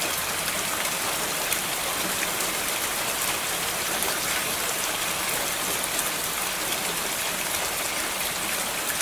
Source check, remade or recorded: recorded